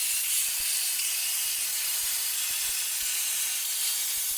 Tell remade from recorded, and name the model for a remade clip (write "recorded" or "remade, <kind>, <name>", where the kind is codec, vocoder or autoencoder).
recorded